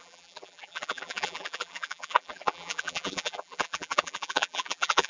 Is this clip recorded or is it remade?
remade